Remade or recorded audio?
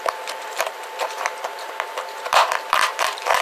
remade